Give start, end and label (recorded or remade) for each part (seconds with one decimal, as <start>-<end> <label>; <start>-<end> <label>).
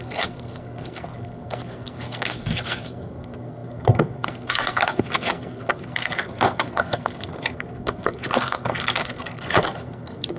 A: 0.0-10.4 remade